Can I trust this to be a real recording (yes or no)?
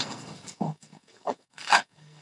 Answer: no